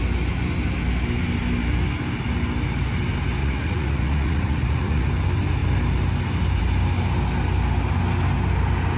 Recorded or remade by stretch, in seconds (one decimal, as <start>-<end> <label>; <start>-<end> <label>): 0.0-3.4 recorded; 3.4-5.1 remade; 5.1-9.0 recorded